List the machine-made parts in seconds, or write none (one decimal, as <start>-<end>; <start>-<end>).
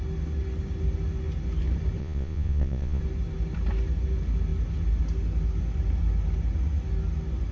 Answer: 2.0-3.0